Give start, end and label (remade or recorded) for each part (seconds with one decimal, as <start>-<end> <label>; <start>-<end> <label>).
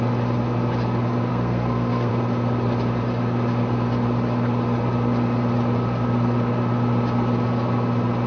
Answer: 0.0-1.3 recorded; 1.3-2.1 remade; 2.1-8.3 recorded